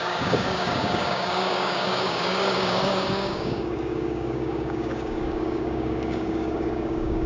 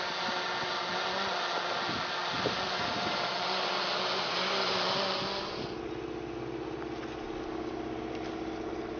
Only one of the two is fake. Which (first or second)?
first